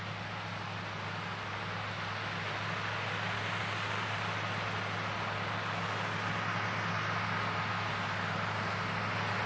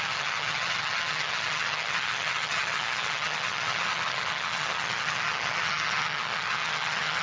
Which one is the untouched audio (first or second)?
first